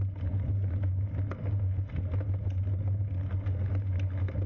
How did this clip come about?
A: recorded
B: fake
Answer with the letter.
A